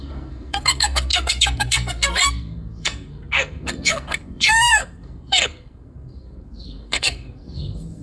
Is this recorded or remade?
remade